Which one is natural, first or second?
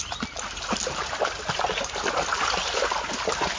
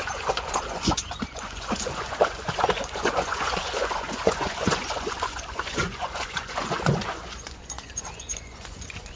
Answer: first